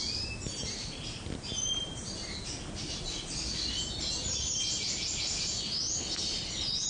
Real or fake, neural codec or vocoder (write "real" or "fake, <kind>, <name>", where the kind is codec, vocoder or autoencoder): real